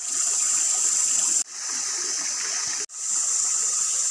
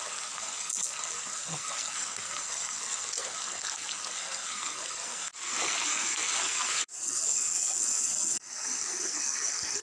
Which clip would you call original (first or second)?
first